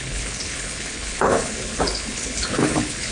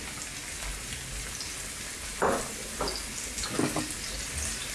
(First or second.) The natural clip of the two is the second